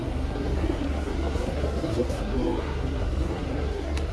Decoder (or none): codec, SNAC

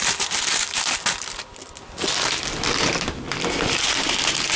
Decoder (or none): none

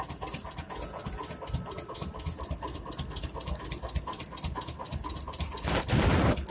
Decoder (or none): none